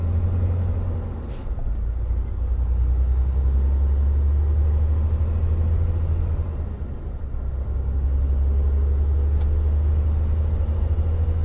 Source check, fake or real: real